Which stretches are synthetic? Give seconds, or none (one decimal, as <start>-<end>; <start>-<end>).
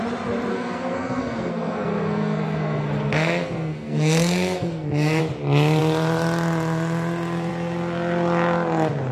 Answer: 0.5-5.2